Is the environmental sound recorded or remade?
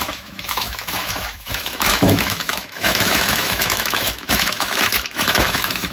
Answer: remade